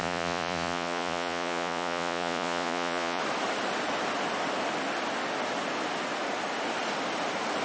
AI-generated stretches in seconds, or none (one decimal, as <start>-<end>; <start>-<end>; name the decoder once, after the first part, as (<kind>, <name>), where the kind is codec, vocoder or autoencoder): 0.0-3.2 (vocoder, Vocos)